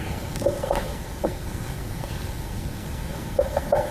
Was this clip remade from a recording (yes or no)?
yes